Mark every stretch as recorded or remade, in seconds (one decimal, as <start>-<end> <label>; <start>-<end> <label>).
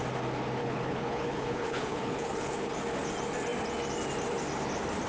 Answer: 0.0-0.6 recorded; 0.6-2.7 remade; 2.7-5.1 recorded